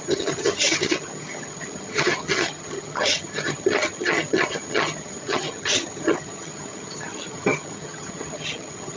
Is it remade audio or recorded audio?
remade